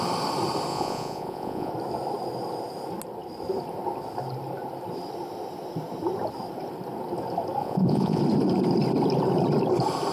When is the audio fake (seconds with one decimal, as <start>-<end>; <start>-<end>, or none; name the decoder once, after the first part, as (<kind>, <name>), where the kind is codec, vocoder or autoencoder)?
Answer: 0.7-1.7 (vocoder, Vocos); 7.6-8.2